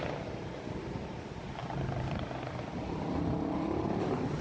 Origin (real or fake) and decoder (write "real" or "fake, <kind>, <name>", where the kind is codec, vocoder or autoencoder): real